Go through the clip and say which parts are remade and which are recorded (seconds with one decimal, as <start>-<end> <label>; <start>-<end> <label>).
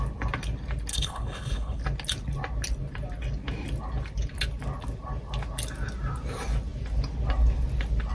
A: 0.0-0.9 recorded; 0.9-1.8 remade; 1.8-8.1 recorded